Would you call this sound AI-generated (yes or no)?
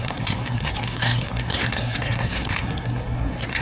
yes